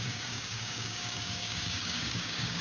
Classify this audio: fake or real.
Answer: fake